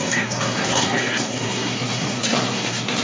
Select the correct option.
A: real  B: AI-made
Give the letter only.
B